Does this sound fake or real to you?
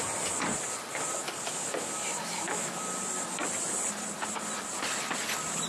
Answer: real